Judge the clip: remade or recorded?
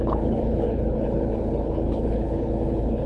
remade